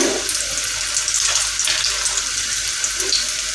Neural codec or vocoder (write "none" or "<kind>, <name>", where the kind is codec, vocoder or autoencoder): none